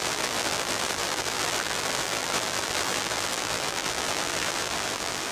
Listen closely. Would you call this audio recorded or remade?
remade